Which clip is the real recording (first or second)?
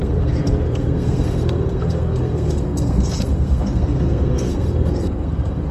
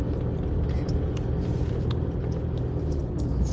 second